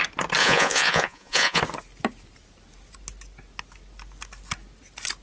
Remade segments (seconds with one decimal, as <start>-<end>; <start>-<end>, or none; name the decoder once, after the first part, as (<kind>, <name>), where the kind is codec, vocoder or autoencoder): 0.4-1.6 (vocoder, Vocos)